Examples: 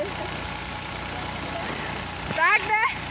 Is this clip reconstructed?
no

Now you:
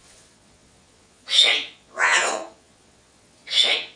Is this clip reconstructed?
yes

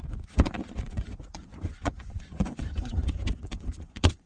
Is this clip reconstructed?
yes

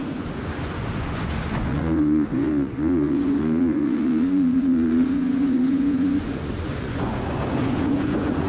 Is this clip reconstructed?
yes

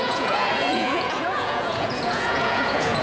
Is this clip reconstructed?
yes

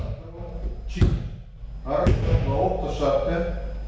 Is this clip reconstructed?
no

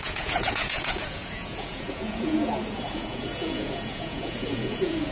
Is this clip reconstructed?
yes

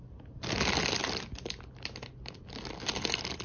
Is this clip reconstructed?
no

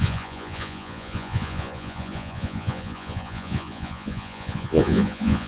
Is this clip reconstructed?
yes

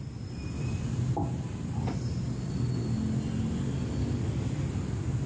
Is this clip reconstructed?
no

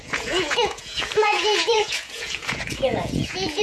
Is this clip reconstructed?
yes